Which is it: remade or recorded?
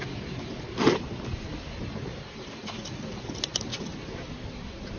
recorded